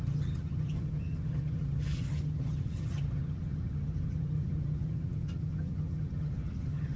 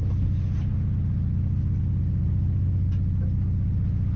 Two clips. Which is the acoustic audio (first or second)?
second